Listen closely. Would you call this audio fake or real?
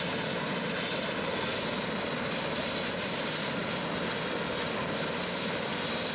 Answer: real